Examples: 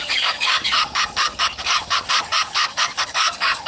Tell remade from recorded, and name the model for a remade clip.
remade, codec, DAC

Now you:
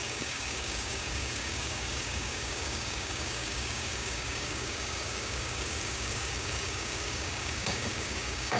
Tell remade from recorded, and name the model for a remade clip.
remade, codec, DAC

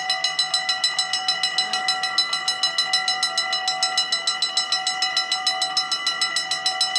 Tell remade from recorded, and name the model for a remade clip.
recorded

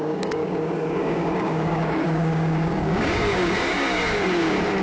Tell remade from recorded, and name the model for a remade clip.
remade, codec, DAC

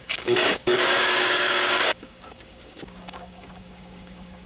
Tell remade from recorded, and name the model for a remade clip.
remade, codec, DAC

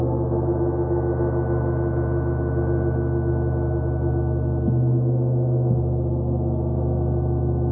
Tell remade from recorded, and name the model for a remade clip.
recorded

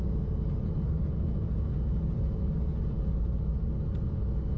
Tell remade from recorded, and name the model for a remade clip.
recorded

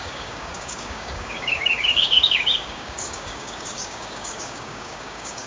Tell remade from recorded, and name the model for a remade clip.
remade, codec, DAC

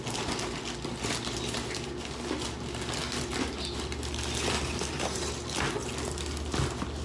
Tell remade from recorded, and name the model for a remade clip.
recorded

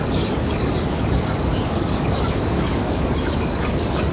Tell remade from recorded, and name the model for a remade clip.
remade, codec, DAC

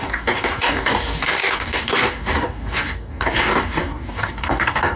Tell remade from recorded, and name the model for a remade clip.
remade, codec, DAC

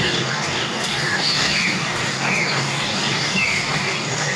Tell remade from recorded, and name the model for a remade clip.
remade, codec, DAC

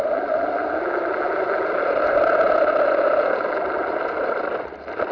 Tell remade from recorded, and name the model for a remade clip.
recorded